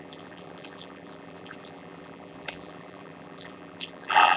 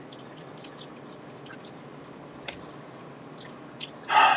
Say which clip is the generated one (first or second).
first